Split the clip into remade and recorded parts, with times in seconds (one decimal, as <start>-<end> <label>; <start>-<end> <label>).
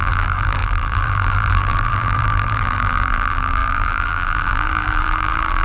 0.0-5.6 remade